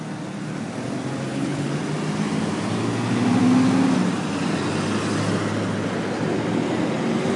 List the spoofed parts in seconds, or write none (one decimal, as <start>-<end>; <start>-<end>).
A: 1.3-1.8